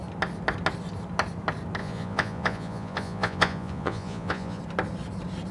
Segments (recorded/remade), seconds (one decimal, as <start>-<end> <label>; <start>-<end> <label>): 0.0-1.8 recorded; 1.8-4.6 remade; 4.6-5.5 recorded